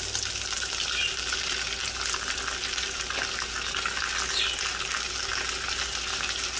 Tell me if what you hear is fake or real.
real